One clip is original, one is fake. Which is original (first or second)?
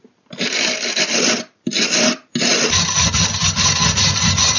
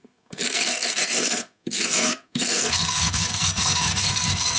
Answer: first